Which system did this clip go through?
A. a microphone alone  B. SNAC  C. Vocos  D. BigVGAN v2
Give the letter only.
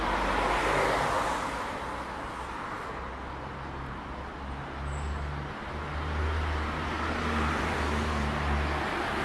A